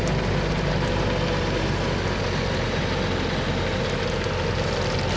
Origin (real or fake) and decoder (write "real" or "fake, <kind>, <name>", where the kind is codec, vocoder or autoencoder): real